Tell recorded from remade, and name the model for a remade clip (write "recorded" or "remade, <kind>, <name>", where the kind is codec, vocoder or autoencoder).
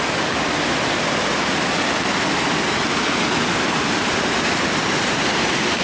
recorded